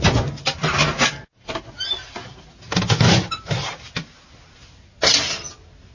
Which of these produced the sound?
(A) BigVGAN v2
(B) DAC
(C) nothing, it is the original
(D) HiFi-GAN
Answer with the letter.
C